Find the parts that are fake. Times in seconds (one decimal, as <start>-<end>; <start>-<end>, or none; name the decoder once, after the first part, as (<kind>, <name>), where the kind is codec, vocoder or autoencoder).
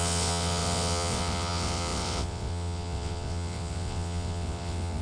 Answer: 0.0-5.0 (vocoder, WaveNeXt)